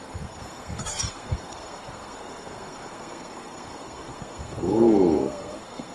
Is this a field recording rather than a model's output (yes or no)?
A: no